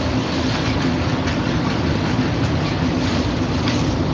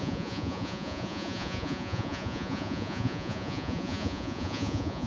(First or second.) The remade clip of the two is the second